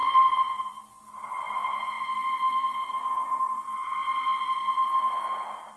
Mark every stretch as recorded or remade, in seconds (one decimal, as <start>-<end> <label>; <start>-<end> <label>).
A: 0.0-5.8 recorded